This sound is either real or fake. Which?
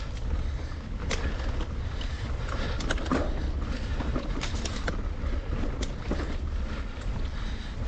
fake